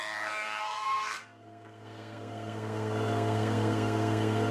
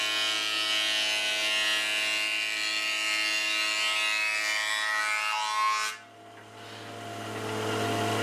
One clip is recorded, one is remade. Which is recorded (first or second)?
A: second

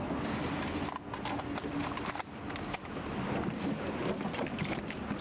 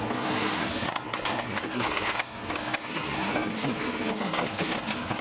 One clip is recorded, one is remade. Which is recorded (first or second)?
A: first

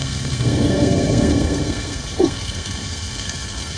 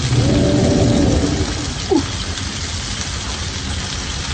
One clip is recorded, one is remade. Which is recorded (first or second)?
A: second